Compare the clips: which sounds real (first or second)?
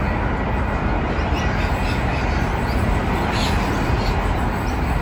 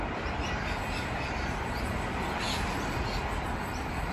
first